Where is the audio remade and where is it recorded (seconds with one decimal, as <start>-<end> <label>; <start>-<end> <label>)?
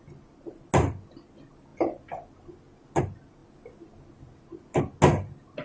0.0-5.6 recorded